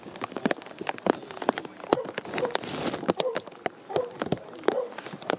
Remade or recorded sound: recorded